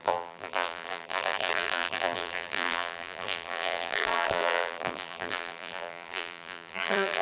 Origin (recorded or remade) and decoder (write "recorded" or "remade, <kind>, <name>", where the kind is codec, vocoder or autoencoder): remade, vocoder, BigVGAN v2